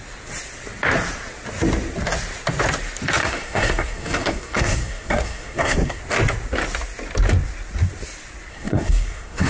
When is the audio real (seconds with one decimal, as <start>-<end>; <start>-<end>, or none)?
0.0-3.2; 6.0-8.5